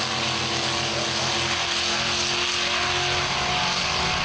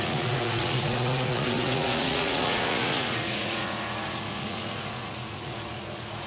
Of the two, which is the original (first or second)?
first